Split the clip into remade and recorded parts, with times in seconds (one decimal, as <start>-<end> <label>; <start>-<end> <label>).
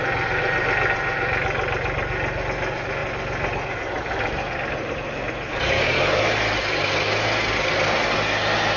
0.0-8.8 recorded